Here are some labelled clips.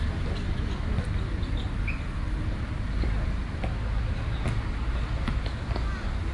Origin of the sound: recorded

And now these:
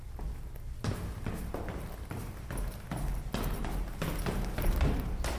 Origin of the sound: recorded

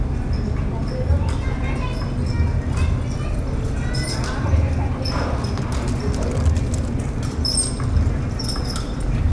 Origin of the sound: recorded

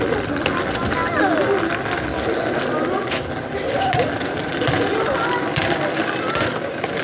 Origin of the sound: recorded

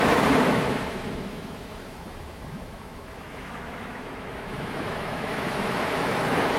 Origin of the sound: remade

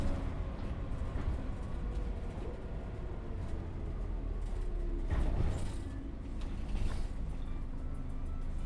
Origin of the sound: recorded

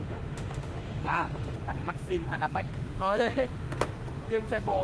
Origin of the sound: remade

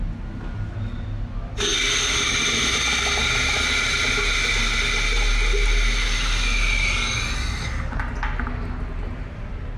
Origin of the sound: recorded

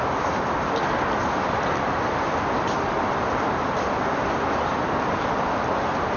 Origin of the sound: recorded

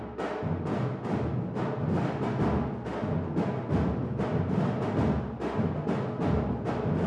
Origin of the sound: recorded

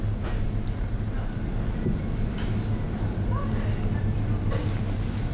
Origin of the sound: recorded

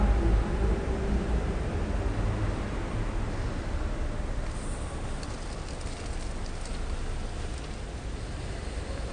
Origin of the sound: recorded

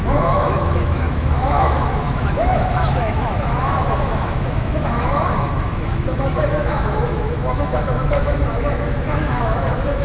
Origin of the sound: remade